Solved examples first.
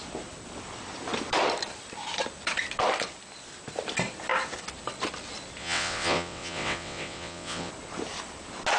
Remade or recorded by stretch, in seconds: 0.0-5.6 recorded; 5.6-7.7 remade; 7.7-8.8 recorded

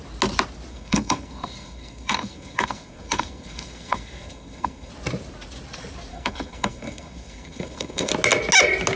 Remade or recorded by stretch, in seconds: 0.0-0.7 recorded; 0.7-4.9 remade; 4.9-6.1 recorded; 6.1-8.1 remade; 8.1-9.0 recorded

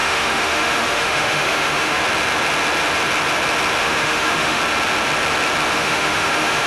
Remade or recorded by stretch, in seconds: 0.0-2.0 remade; 2.0-3.8 recorded; 3.8-4.6 remade; 4.6-5.7 recorded; 5.7-6.7 remade

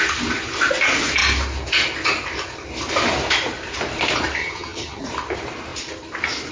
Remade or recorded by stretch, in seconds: 0.0-4.4 recorded; 4.4-5.0 remade; 5.0-6.5 recorded

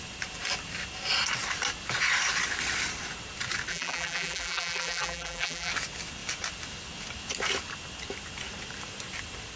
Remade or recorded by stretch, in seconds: 0.0-3.7 recorded; 3.7-5.7 remade; 5.7-9.6 recorded

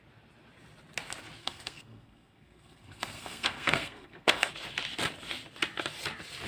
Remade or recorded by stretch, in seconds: 0.0-1.4 recorded; 1.4-4.5 remade; 4.5-6.5 recorded

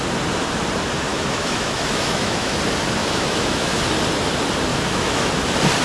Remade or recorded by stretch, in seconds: 0.0-1.1 recorded; 1.1-2.6 remade; 2.6-3.0 recorded; 3.0-3.7 remade; 3.7-4.7 recorded; 4.7-5.3 remade; 5.3-5.8 recorded